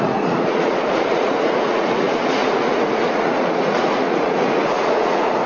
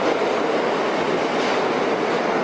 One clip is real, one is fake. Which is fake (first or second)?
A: first